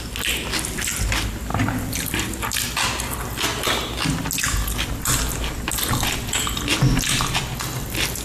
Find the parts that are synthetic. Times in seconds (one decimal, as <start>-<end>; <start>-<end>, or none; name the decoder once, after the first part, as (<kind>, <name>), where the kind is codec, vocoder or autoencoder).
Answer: none